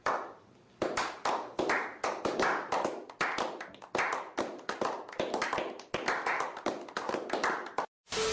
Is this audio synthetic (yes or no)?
no